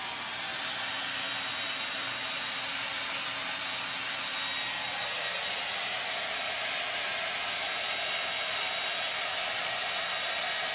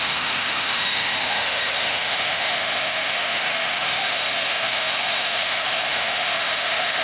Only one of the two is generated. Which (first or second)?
second